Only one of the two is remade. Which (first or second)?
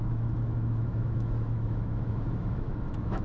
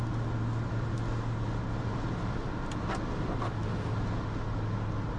first